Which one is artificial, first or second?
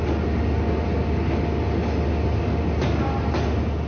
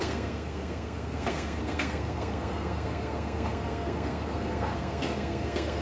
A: second